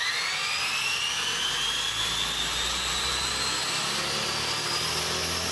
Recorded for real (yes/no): yes